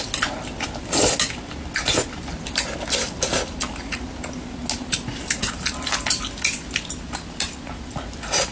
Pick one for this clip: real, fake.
real